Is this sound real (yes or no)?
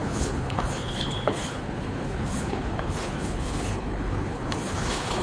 no